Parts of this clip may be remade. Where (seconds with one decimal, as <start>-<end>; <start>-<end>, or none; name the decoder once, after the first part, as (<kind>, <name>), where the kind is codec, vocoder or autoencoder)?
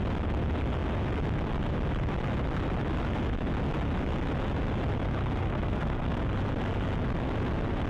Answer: 5.4-6.2 (codec, SNAC)